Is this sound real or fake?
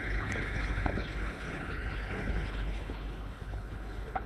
fake